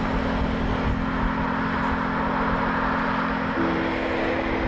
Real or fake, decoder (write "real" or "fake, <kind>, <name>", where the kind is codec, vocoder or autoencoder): real